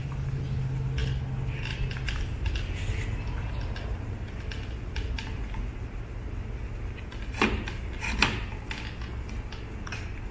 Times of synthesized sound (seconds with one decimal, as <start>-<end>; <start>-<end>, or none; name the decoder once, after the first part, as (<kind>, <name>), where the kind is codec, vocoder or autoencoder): none